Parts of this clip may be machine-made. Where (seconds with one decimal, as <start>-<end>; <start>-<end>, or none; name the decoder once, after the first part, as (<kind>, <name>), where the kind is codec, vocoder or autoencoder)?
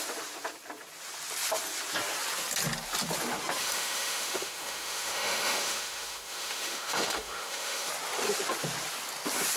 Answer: 3.6-7.9 (autoencoder, DAC-VAE)